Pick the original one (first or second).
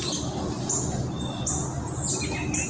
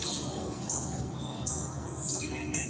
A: first